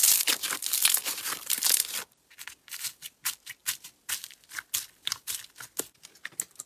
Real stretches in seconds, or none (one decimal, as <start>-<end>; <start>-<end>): 0.0-1.0; 2.3-3.6; 4.1-6.7